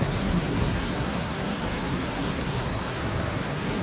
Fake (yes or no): yes